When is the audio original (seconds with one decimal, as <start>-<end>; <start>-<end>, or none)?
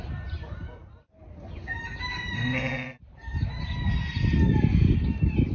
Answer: 0.0-5.5